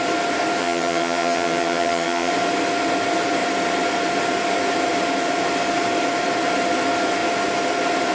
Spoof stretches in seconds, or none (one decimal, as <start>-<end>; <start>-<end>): 0.6-2.3